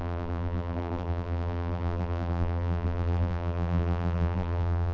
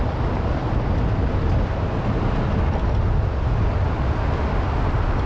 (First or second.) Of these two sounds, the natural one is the second